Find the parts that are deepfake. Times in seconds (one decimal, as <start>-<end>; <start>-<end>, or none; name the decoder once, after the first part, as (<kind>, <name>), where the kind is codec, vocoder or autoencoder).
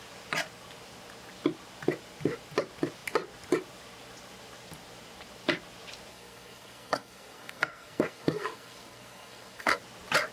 6.1-9.8 (codec, SNAC)